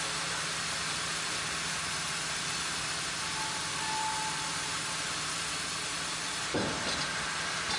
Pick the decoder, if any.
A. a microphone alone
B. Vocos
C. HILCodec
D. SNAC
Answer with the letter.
A